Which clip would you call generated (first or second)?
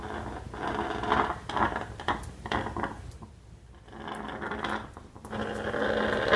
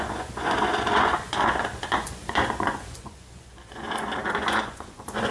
second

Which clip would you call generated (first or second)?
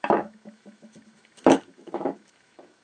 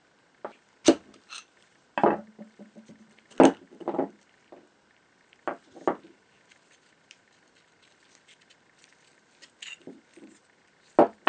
first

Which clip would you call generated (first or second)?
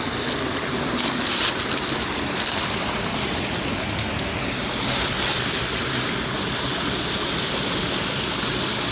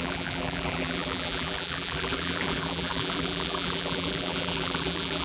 second